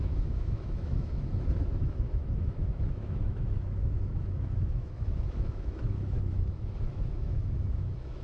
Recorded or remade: remade